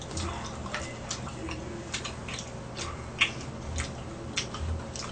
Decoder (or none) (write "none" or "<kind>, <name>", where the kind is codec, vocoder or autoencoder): none